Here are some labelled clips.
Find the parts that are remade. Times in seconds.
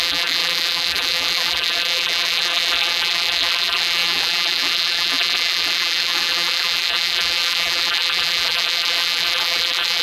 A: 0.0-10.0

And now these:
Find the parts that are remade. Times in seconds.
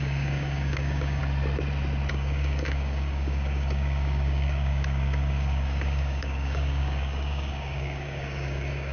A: 0.0-1.2; 2.1-8.9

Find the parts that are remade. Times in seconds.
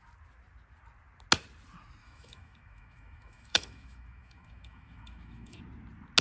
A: 2.0-5.6